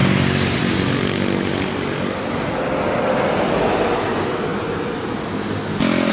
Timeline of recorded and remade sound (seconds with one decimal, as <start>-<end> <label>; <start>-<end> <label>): 0.0-4.5 recorded; 4.5-5.0 remade; 5.0-6.1 recorded